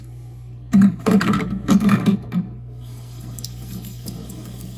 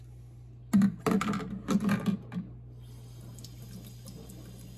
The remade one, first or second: first